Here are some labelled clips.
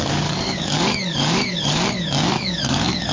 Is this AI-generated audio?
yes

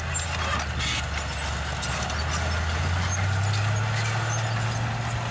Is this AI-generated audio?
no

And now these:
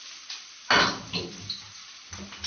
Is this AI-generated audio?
no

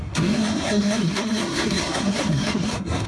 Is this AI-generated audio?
yes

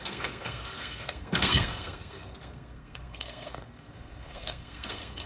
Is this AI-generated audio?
yes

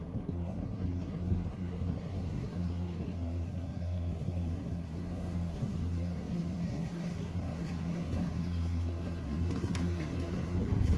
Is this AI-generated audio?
yes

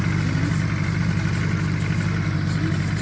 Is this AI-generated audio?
no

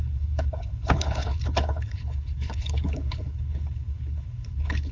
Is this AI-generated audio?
yes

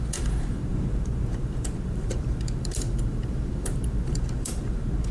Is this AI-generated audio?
yes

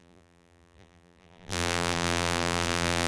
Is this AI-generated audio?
yes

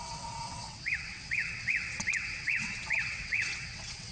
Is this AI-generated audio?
yes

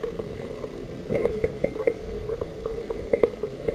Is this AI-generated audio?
yes